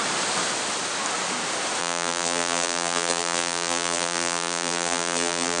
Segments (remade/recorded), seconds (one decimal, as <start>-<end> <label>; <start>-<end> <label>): 0.0-1.8 recorded; 1.8-5.6 remade